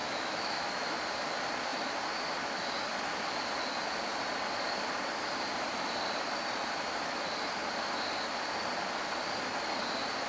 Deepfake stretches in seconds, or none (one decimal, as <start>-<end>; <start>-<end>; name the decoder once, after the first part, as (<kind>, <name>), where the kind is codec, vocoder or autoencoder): 0.0-0.9 (autoencoder, DAC-VAE)